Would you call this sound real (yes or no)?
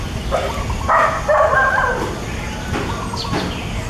yes